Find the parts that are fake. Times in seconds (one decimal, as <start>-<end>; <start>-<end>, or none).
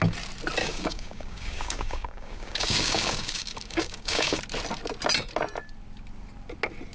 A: 0.6-4.4